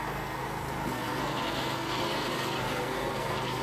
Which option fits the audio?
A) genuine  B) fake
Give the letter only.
B